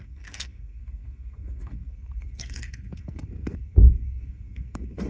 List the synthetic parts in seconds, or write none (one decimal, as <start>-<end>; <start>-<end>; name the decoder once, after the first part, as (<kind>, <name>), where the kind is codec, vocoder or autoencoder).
0.0-5.1 (codec, SNAC)